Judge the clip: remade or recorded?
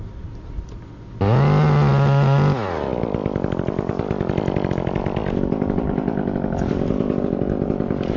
recorded